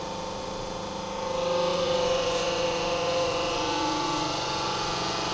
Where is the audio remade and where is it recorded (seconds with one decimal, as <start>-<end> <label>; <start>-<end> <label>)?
0.0-1.7 recorded; 1.7-5.3 remade